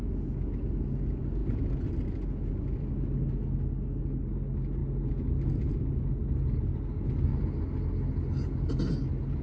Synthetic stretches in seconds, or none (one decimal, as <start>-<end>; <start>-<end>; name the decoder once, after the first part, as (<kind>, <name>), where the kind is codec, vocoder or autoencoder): none